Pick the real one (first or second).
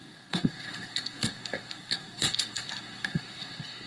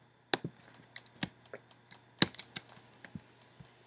second